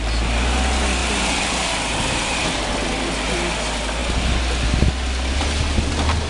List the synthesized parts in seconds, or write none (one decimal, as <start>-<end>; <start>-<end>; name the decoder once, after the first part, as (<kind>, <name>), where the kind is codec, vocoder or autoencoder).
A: 1.0-2.6 (vocoder, BigVGAN v2)